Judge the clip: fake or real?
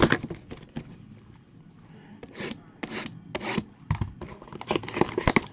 real